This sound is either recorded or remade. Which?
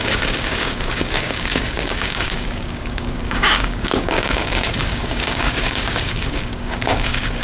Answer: remade